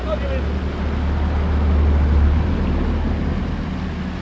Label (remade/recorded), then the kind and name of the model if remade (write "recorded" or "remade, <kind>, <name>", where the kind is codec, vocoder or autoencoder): recorded